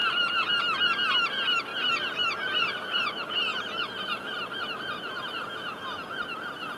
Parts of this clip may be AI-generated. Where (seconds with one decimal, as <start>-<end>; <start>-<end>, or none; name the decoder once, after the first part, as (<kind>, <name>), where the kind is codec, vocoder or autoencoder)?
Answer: 0.0-0.6 (vocoder, BigVGAN v2); 1.7-5.8